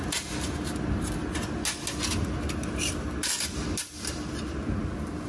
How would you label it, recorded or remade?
recorded